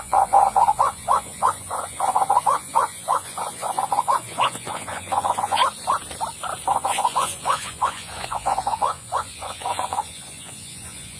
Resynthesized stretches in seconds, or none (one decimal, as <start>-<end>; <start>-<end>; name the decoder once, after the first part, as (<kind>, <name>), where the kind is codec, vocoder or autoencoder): 0.0-5.6 (vocoder, Vocos); 6.7-11.2